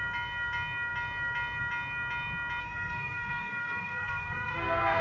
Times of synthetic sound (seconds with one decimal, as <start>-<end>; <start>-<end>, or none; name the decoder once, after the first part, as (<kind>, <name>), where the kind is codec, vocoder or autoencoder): 2.6-5.0 (codec, SNAC)